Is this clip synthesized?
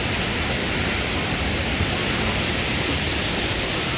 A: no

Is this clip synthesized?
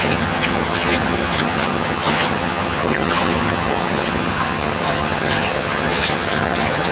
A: yes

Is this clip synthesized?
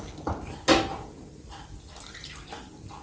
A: no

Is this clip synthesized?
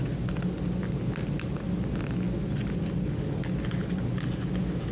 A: no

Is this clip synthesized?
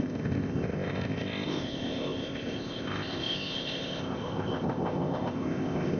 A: yes